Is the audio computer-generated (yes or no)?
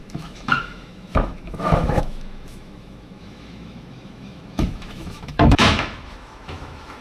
yes